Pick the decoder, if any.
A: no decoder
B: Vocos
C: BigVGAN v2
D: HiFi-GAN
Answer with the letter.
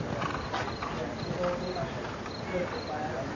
A